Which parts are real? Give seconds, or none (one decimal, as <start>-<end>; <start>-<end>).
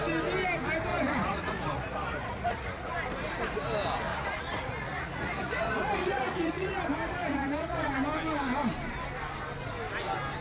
0.0-0.9; 2.9-4.1; 6.8-7.2; 7.9-10.4